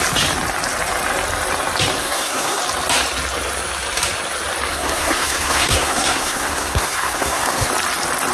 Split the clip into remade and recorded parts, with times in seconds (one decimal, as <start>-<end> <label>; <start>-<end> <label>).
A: 0.0-2.0 recorded; 2.0-2.6 remade; 2.6-4.7 recorded; 4.7-7.7 remade; 7.7-8.3 recorded